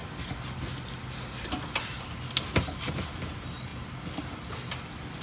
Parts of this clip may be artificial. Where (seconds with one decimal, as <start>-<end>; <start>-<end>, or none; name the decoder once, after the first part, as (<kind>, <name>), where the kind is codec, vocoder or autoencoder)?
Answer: none